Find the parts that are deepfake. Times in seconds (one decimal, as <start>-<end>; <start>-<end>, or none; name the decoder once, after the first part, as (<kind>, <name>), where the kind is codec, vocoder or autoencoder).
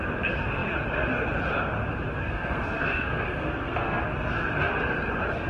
2.2-4.0 (codec, SNAC)